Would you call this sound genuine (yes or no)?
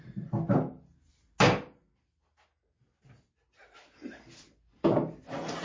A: yes